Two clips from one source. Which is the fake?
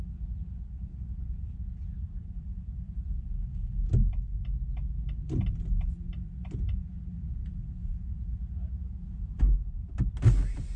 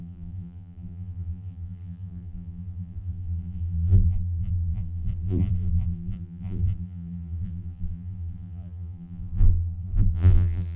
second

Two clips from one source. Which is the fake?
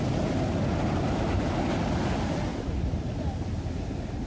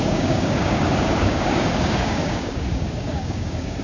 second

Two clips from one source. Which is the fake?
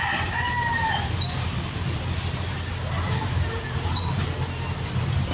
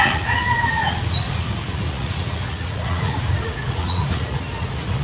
second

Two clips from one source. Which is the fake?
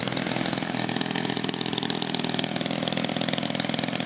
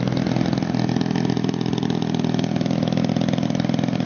first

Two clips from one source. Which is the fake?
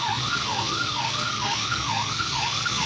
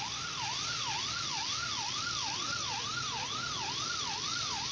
first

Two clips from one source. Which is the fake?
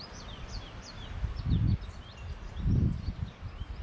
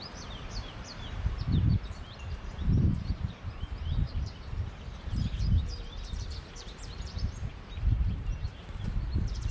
second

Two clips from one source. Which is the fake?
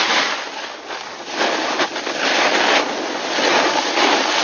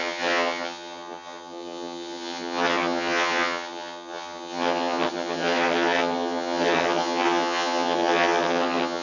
second